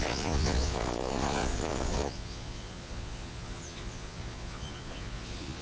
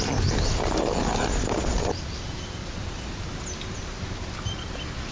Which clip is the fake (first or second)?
first